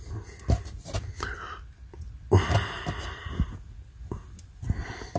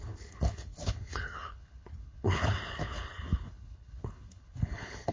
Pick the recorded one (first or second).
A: first